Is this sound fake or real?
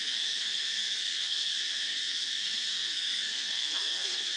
fake